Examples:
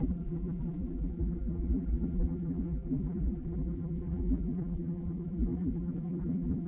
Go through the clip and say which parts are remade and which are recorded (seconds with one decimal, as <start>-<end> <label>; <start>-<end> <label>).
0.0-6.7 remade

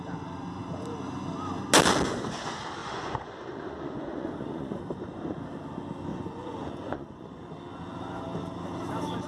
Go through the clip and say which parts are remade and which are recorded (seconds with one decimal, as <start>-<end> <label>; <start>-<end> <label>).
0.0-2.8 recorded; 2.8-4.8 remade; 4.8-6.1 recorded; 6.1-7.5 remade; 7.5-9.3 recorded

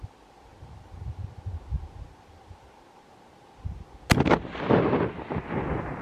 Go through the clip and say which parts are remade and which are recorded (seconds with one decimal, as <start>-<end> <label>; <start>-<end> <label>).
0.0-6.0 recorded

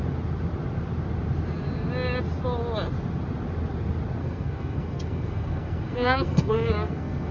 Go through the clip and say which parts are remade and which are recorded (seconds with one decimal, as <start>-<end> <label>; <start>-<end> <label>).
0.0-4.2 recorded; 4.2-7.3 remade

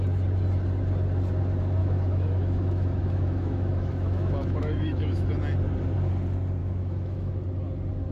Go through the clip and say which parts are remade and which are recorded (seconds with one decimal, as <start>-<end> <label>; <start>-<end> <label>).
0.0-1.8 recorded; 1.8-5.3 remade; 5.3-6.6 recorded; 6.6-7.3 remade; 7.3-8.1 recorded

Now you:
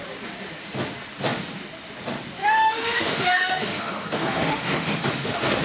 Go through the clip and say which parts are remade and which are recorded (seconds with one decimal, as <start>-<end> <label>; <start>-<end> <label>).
0.0-2.4 recorded; 2.4-5.6 remade

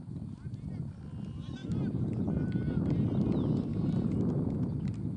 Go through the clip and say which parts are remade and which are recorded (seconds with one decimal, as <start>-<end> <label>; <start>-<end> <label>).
0.0-5.2 recorded